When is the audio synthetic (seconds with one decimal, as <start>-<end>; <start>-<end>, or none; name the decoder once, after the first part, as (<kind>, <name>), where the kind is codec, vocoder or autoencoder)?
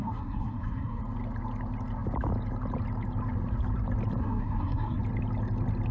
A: 0.0-1.0 (codec, SNAC); 4.2-5.0